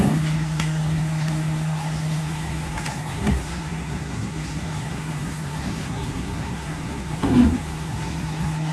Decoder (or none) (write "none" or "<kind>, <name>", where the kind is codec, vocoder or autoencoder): codec, SNAC